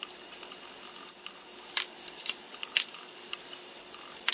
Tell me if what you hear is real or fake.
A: real